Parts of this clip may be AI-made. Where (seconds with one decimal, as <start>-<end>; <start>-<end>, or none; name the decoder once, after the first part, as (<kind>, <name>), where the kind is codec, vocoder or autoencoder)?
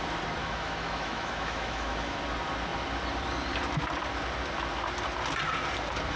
0.4-2.2 (autoencoder, DAC-VAE)